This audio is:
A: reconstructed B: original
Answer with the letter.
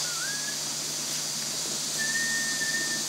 B